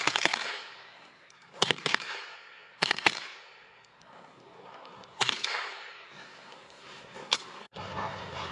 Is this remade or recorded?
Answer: remade